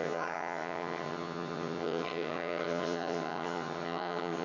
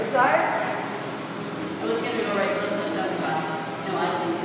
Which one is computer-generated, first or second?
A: first